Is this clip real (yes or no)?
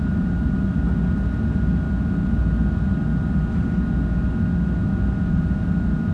yes